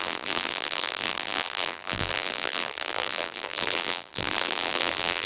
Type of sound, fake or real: fake